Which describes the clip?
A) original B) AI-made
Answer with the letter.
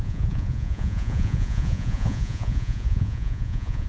B